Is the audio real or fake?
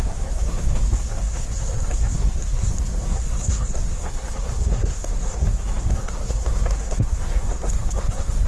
fake